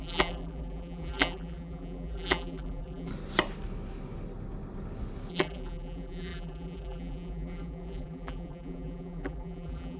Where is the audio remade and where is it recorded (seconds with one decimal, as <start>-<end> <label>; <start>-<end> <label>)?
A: 0.0-3.1 remade; 3.1-5.3 recorded; 5.3-10.0 remade